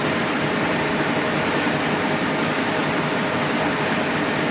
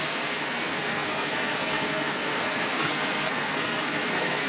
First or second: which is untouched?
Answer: first